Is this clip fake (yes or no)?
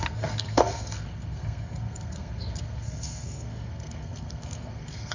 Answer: yes